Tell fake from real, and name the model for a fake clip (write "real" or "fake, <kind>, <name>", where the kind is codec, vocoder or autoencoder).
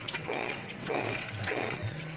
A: fake, vocoder, WaveNeXt